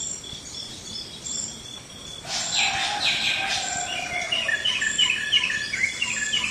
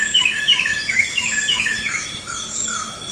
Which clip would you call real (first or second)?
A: first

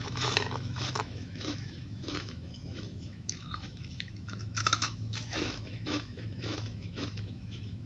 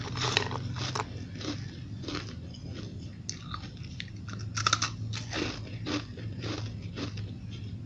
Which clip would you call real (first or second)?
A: second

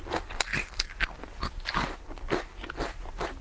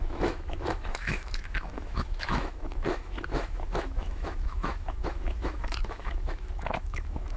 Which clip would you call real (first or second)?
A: first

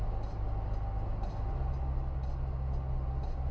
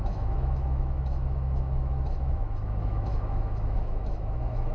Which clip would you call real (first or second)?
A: first